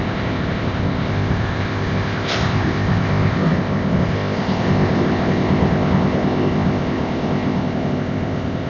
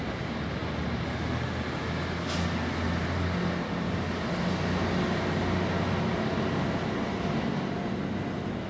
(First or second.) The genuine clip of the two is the second